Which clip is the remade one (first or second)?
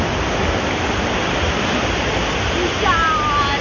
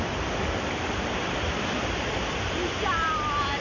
second